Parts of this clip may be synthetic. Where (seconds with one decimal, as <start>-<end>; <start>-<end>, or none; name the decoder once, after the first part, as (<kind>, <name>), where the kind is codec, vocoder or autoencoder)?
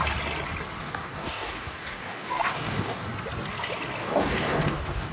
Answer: 0.8-3.1 (codec, DAC); 4.0-5.1